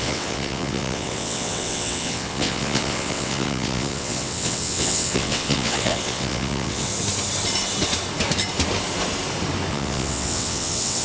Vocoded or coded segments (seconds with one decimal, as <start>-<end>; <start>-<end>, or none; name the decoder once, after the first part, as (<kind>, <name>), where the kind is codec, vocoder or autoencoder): 0.0-6.9 (vocoder, WaveNeXt); 9.7-11.0